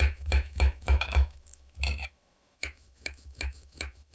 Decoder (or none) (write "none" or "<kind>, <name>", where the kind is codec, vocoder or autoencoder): autoencoder, DAC-VAE